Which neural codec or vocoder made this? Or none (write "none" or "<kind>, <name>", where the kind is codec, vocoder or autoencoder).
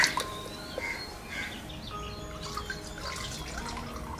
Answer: none